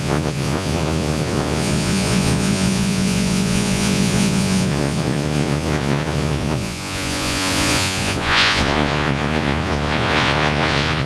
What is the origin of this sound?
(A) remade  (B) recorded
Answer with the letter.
A